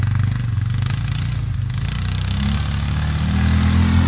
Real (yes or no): yes